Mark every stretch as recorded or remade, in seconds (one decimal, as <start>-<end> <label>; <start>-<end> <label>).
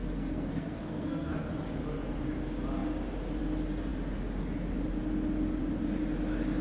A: 0.0-1.5 remade; 1.5-6.6 recorded